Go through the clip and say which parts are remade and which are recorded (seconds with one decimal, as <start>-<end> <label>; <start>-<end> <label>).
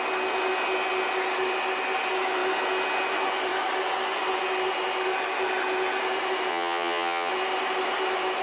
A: 0.0-6.5 recorded; 6.5-7.3 remade; 7.3-8.4 recorded